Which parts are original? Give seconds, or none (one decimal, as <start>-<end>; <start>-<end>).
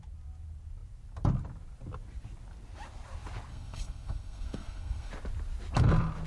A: 0.0-3.5; 5.1-6.3